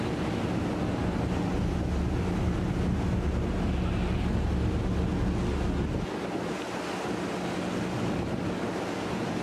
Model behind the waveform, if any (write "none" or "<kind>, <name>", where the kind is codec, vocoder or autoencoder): none